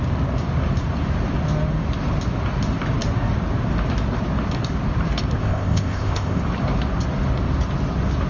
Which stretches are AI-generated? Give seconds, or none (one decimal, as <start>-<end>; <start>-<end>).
5.4-6.4